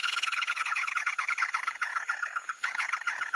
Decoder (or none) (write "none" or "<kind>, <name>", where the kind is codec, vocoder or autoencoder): codec, HILCodec